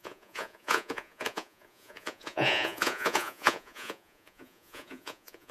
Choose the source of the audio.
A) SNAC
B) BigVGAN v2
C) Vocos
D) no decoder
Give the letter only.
C